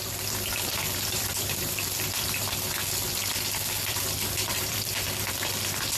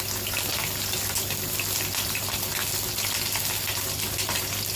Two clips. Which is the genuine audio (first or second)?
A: second